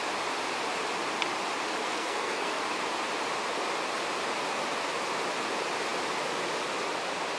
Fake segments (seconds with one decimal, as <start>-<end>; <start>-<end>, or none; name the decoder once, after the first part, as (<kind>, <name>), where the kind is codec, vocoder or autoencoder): 1.8-2.6 (codec, SNAC)